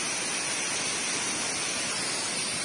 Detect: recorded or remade recorded